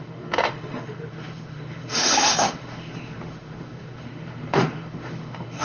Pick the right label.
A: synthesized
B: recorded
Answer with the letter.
A